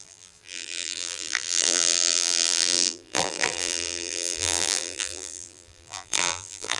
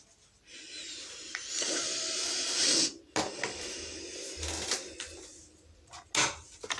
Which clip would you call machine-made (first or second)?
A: first